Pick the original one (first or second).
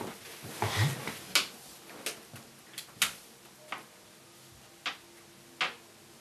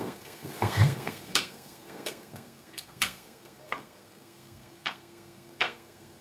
first